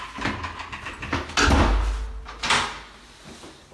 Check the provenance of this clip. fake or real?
real